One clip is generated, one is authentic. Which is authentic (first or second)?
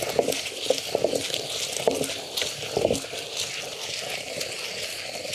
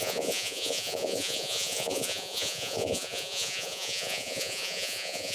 first